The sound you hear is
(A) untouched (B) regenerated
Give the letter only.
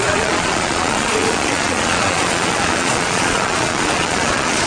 B